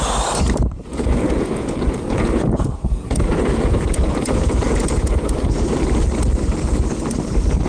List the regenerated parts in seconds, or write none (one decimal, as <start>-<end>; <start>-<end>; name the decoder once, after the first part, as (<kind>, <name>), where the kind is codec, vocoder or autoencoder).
0.9-5.5 (vocoder, Vocos)